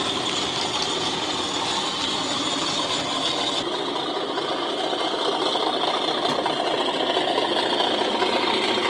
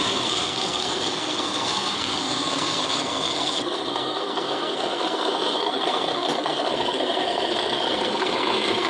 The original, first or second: first